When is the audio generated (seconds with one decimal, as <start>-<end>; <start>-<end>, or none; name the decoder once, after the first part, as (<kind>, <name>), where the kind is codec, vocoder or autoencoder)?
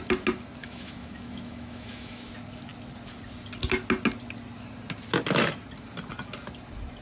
0.6-2.3 (autoencoder, DAC-VAE)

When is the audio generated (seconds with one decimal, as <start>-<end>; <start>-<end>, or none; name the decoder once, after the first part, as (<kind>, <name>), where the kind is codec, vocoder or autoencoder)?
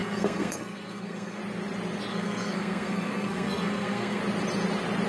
0.0-1.4 (codec, SNAC); 2.1-4.2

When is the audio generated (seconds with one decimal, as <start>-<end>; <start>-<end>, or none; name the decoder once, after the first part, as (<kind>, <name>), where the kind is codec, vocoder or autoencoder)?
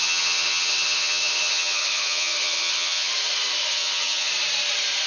0.0-3.1 (vocoder, HiFi-GAN); 3.6-4.3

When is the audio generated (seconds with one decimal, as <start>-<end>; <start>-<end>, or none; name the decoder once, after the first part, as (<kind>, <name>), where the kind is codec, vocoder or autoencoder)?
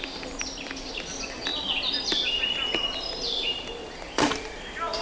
0.0-5.0 (vocoder, BigVGAN v2)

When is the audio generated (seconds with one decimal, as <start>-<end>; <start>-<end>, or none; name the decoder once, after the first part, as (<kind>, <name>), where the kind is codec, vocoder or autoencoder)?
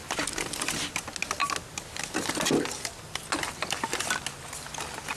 none